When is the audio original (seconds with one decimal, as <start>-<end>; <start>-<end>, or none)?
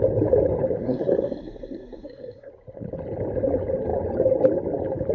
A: 0.0-0.8; 2.5-5.1